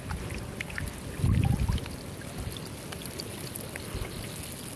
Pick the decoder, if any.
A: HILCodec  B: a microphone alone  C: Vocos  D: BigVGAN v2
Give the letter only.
B